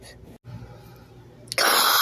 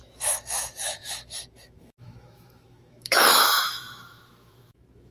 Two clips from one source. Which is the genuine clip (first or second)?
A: first